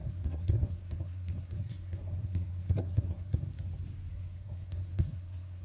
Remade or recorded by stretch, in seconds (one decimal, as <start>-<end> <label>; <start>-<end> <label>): 0.0-3.5 remade; 3.5-4.1 recorded; 4.1-5.6 remade